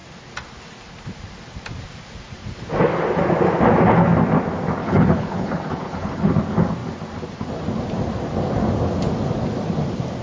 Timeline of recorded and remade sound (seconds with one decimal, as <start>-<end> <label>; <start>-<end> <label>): 0.0-4.8 recorded; 4.8-6.3 remade; 6.3-10.2 recorded